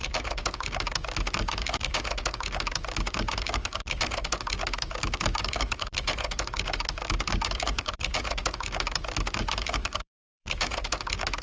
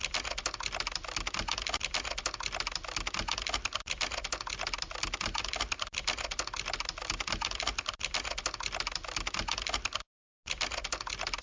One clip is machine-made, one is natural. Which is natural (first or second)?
second